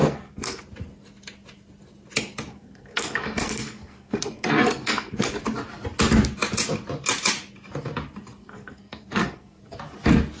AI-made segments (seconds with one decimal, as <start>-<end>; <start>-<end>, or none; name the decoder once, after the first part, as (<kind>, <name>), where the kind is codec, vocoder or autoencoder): 0.0-0.6 (codec, SNAC); 2.5-5.3; 8.4-9.6